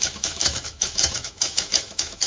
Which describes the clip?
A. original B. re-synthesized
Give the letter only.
B